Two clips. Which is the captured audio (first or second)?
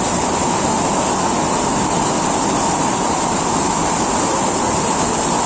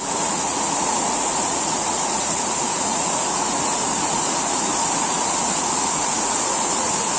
first